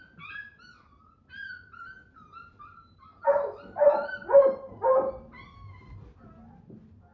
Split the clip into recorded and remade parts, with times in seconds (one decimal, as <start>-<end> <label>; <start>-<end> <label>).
0.0-3.1 recorded; 3.1-5.1 remade; 5.1-7.1 recorded